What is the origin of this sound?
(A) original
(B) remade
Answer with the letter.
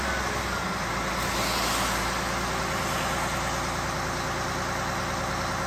A